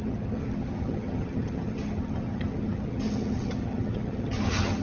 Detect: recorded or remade remade